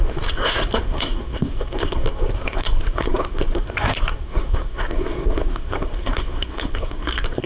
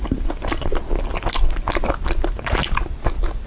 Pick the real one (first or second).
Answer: second